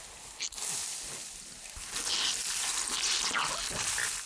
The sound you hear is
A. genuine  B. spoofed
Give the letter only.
A